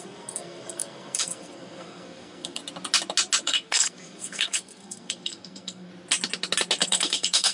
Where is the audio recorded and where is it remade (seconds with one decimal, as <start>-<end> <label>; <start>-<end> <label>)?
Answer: 0.0-2.6 remade; 2.6-3.4 recorded; 3.4-5.9 remade; 5.9-6.8 recorded; 6.8-7.5 remade